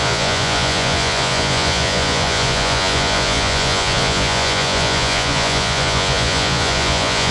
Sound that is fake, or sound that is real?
fake